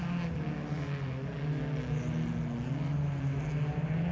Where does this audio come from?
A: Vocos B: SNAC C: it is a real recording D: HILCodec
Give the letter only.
C